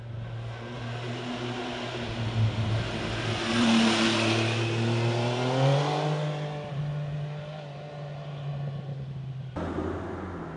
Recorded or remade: recorded